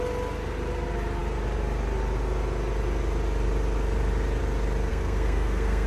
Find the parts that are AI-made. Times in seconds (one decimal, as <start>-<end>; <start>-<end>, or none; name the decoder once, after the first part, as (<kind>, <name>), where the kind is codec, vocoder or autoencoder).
4.9-5.9 (codec, SNAC)